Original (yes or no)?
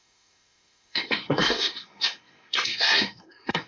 no